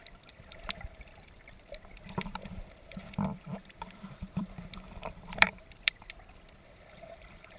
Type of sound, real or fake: fake